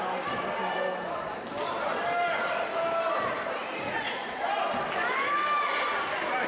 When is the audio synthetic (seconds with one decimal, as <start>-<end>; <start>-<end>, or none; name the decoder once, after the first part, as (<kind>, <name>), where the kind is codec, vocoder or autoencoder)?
3.6-4.4 (vocoder, Vocos)